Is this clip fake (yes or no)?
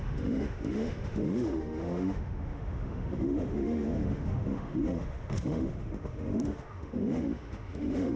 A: yes